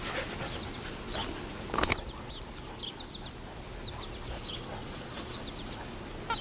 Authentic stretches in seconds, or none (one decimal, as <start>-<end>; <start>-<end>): 0.0-4.8; 5.4-6.4